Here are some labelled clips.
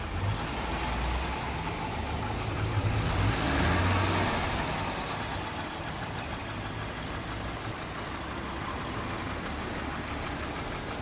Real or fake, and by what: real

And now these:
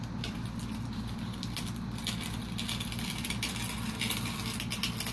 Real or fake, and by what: real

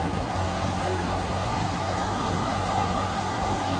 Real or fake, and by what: fake, codec, SNAC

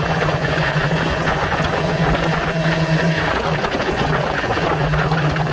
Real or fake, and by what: fake, vocoder, Vocos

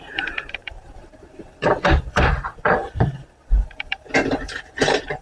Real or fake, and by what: fake, vocoder, BigVGAN v2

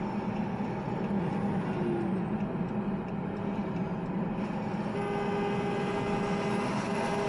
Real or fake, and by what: real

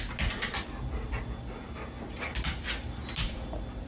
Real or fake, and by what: real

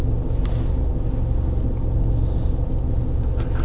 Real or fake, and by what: real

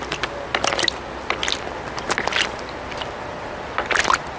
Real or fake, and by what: real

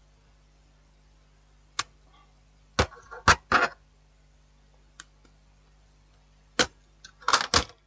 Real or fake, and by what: real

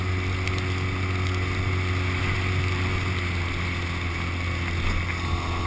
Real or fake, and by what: real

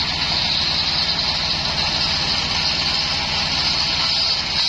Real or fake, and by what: real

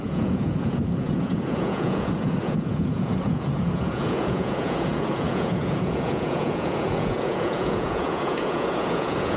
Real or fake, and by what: fake, vocoder, Vocos